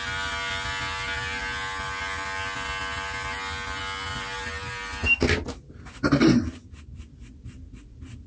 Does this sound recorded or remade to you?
recorded